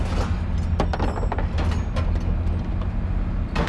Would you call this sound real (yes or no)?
yes